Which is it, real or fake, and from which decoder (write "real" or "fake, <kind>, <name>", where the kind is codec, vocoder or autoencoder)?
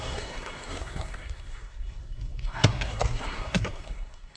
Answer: fake, codec, SNAC